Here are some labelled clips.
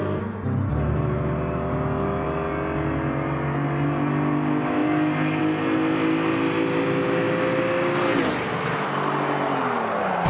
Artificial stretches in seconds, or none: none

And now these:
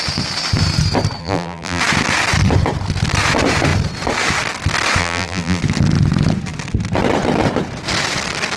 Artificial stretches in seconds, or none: 1.2-1.8 (vocoder, BigVGAN v2); 5.0-5.6

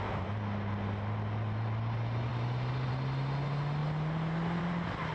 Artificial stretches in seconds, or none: none

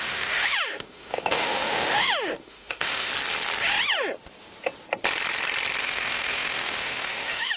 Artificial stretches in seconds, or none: 0.0-3.1 (autoencoder, DAC-VAE); 5.8-7.6

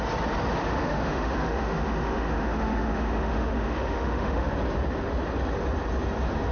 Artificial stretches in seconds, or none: 0.6-4.5 (autoencoder, DAC-VAE)

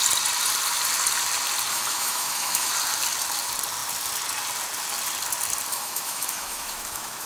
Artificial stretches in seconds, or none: 1.7-2.7 (autoencoder, DAC-VAE); 5.7-7.3

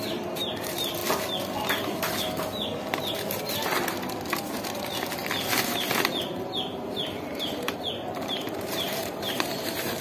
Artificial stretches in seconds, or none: 0.0-1.0 (vocoder, BigVGAN v2); 6.0-10.0

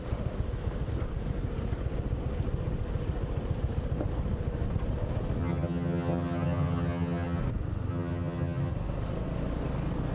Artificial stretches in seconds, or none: 5.4-7.4 (vocoder, HiFi-GAN); 7.9-8.7